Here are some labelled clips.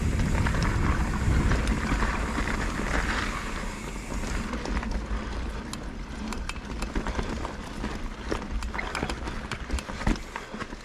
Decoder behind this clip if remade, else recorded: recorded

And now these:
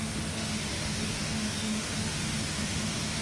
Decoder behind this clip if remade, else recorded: remade, autoencoder, DAC-VAE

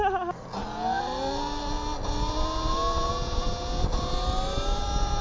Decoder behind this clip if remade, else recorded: recorded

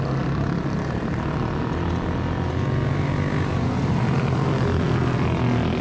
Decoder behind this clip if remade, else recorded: recorded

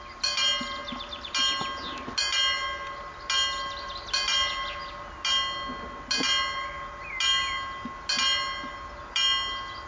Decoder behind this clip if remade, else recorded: recorded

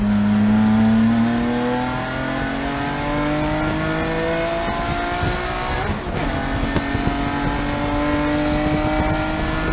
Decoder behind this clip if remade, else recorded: recorded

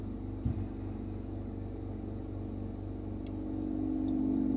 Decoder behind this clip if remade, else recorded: remade, vocoder, BigVGAN v2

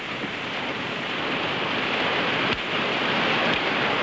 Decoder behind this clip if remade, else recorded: remade, vocoder, BigVGAN v2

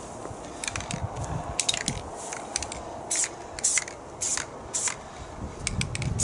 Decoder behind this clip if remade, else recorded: recorded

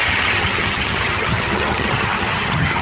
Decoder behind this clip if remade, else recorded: remade, vocoder, HiFi-GAN